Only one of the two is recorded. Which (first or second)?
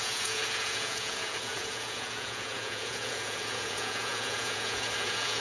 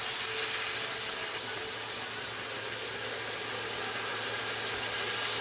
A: second